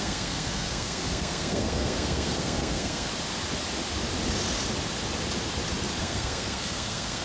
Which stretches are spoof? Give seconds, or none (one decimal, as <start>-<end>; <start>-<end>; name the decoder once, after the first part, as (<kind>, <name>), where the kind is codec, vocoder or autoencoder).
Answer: 0.0-3.1 (codec, SNAC); 6.0-7.2